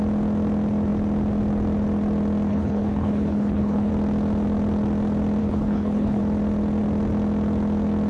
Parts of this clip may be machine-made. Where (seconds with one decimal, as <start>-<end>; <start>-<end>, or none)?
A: 2.5-3.9; 5.4-6.2